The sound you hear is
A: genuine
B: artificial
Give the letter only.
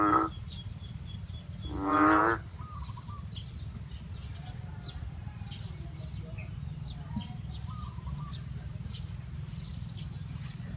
A